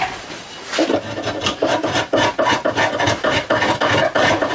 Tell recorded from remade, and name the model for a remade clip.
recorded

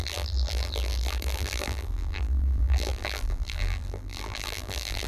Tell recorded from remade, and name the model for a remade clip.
remade, vocoder, BigVGAN v2